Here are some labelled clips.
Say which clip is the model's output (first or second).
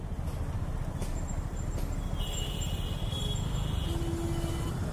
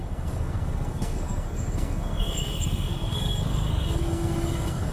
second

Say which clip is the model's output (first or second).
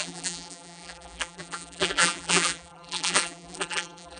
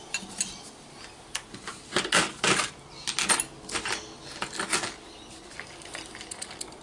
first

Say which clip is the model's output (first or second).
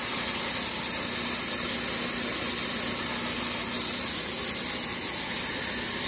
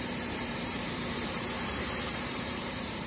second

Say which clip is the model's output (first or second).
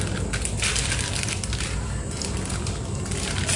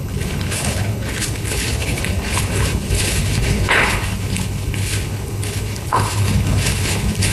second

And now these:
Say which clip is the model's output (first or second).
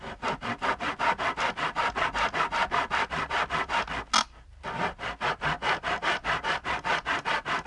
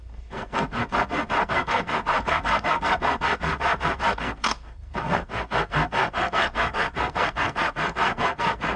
second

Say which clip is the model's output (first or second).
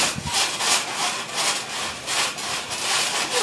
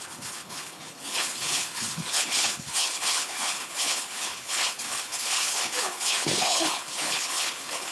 second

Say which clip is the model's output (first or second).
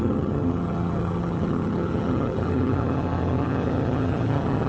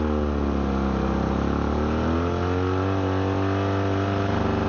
first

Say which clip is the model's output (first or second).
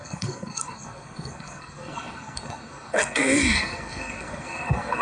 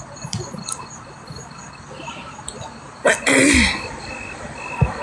first